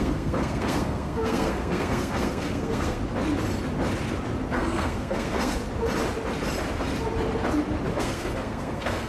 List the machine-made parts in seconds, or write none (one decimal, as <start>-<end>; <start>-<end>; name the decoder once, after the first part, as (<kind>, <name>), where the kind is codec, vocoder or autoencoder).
0.0-3.0 (codec, SNAC); 4.5-5.6; 7.9-9.1